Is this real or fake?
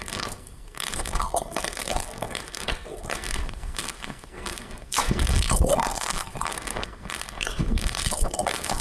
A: fake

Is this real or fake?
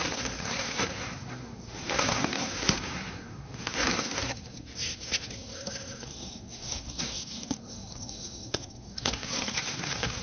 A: fake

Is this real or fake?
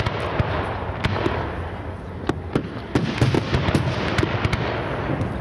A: real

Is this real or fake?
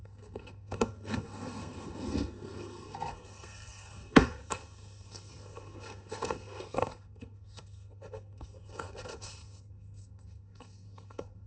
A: fake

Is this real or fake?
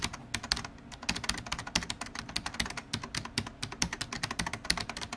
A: real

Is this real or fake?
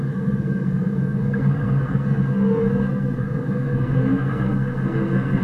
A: fake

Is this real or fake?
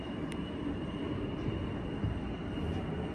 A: real